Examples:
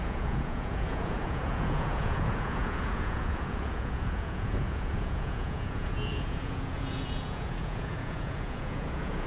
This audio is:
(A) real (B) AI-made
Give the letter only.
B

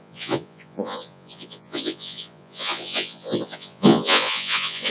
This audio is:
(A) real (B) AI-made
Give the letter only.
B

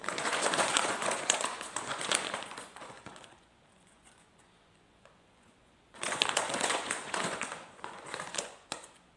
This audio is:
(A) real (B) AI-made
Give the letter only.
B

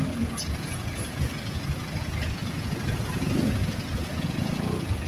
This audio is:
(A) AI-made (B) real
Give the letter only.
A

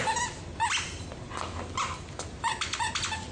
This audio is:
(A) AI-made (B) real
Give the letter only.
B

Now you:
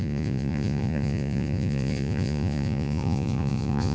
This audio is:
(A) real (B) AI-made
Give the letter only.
B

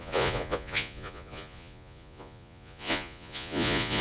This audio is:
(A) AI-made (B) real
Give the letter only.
A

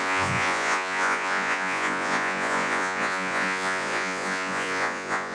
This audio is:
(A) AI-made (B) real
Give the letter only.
A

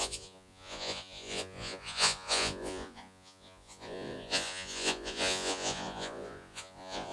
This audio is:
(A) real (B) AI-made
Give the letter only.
B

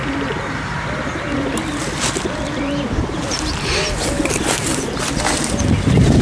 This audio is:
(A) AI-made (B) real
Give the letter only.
B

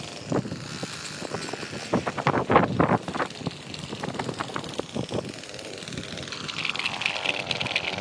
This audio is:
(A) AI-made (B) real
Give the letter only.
B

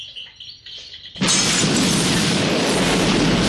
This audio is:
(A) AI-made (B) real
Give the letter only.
B